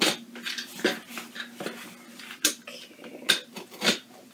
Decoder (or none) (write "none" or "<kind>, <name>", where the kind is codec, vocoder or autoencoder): none